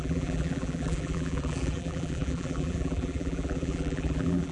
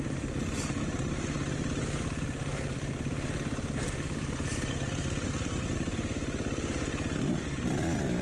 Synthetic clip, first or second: first